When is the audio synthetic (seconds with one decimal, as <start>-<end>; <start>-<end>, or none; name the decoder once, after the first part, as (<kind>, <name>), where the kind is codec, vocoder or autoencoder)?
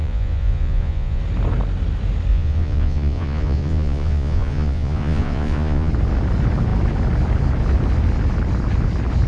0.0-1.2 (vocoder, Vocos); 2.3-5.9